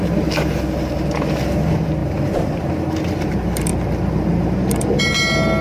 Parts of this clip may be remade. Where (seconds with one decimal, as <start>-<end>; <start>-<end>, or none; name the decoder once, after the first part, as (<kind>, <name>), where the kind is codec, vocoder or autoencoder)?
none